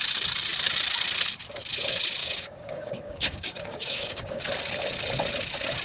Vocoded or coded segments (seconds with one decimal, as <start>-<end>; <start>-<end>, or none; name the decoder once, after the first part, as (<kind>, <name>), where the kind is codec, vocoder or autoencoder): 2.2-4.4 (codec, DAC)